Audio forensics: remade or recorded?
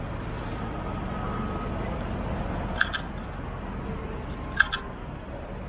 recorded